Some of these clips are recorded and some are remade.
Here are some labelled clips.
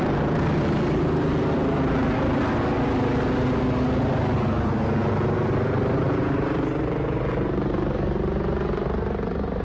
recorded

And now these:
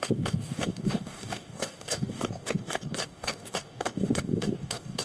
remade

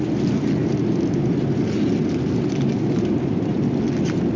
recorded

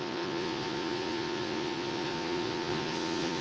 remade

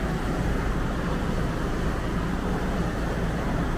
recorded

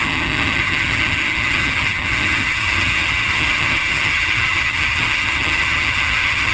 remade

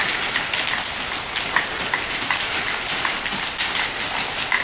recorded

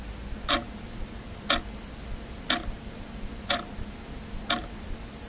recorded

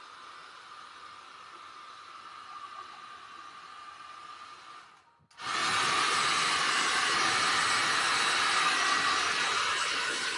recorded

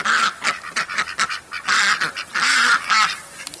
recorded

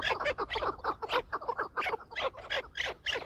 recorded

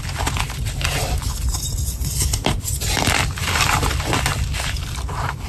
recorded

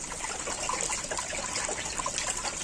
recorded